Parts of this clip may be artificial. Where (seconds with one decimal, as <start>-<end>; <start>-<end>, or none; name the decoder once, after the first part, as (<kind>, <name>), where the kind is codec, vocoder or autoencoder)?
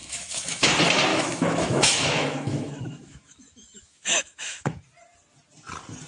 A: 0.0-0.7 (autoencoder, DAC-VAE); 1.1-4.8